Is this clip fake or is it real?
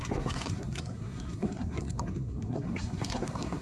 fake